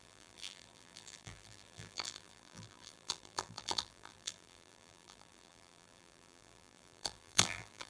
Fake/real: fake